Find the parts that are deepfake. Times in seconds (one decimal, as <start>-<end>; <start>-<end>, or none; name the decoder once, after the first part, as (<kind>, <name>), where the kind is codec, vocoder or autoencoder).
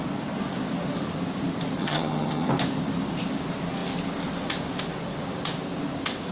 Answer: 1.8-2.5 (vocoder, HiFi-GAN)